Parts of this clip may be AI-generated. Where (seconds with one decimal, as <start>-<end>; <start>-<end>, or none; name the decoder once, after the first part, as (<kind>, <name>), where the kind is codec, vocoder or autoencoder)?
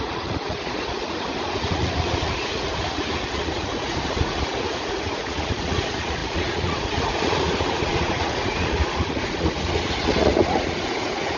0.0-11.4 (vocoder, Vocos)